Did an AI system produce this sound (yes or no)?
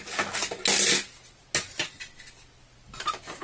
no